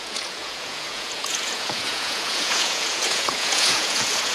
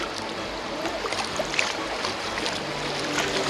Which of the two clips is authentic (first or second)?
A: second